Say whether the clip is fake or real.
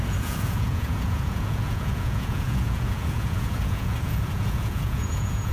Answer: fake